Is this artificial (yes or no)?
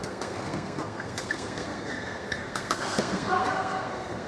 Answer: yes